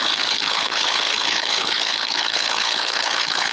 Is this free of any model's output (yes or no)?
no